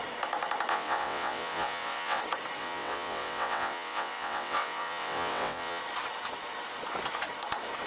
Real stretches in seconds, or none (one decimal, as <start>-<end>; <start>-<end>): 0.0-0.7; 2.2-2.6; 5.8-7.9